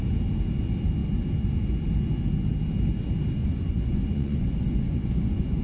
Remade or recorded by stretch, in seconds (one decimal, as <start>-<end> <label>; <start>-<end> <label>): 0.0-3.4 recorded; 3.4-5.6 remade